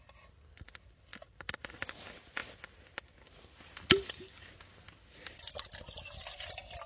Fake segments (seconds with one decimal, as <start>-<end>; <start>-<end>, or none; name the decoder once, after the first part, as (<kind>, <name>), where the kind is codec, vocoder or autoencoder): none